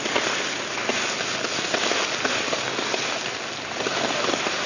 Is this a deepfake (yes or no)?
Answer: no